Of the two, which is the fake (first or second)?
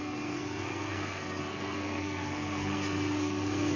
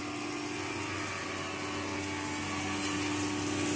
first